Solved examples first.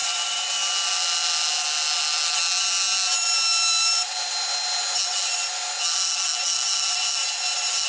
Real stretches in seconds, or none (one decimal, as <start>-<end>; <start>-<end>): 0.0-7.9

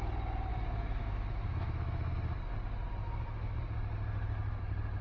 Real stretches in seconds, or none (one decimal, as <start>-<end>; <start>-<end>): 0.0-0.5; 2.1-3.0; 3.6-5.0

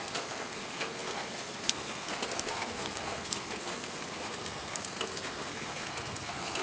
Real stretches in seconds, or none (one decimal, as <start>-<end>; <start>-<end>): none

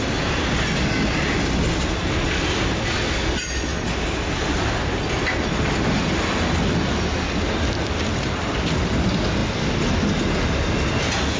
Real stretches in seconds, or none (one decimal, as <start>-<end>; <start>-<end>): 0.0-11.4